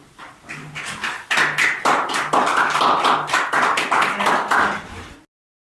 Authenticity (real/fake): real